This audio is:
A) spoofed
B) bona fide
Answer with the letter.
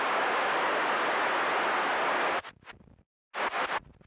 B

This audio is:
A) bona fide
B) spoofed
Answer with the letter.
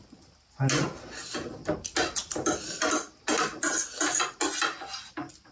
A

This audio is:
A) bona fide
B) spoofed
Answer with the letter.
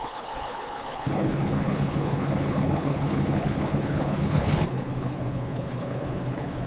B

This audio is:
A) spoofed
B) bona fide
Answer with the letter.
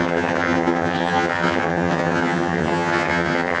A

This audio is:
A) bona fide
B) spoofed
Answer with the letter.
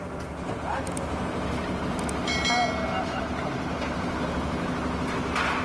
A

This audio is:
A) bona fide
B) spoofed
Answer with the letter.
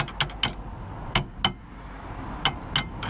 A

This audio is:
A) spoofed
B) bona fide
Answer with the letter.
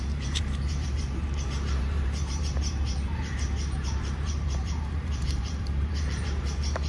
A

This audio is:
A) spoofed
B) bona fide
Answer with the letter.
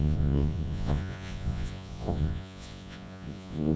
A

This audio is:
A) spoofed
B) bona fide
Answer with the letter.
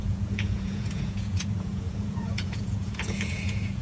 A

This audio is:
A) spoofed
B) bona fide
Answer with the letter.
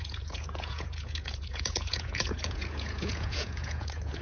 A